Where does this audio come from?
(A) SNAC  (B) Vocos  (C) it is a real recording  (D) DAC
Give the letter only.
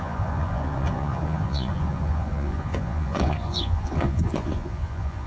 B